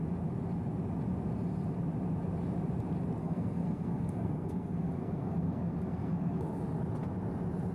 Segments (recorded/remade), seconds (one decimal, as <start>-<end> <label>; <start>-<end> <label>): 0.0-3.2 recorded; 3.2-6.6 remade; 6.6-7.7 recorded